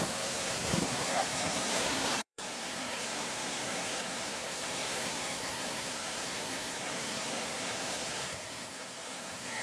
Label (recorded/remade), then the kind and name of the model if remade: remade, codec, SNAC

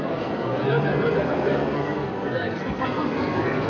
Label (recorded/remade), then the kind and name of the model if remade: remade, codec, SNAC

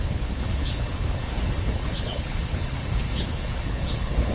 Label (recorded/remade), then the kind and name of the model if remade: remade, codec, HILCodec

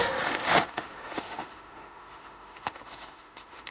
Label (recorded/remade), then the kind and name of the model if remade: remade, autoencoder, DAC-VAE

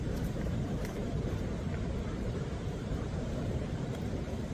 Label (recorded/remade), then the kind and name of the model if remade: remade, vocoder, BigVGAN v2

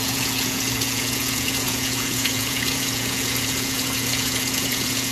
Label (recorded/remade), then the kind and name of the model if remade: remade, vocoder, Vocos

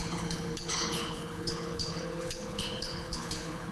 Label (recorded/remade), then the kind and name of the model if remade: remade, codec, HILCodec